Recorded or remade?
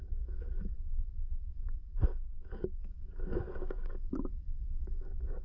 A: remade